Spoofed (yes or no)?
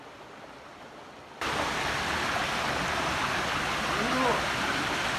no